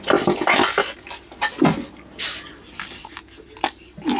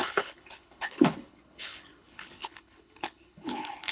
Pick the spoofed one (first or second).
second